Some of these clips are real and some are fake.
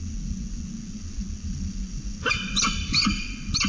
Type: real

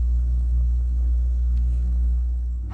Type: fake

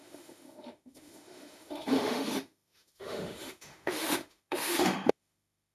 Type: fake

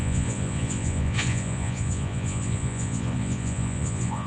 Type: fake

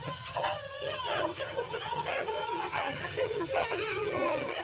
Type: fake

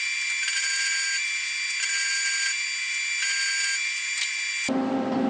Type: real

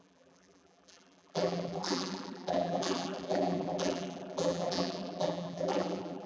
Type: fake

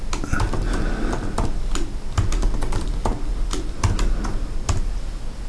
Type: real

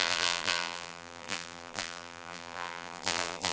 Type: fake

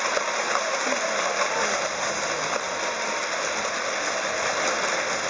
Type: real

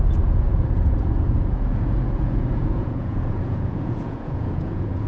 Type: fake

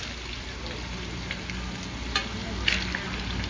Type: real